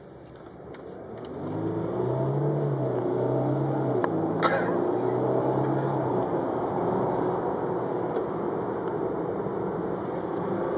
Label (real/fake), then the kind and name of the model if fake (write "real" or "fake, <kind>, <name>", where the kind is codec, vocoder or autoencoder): real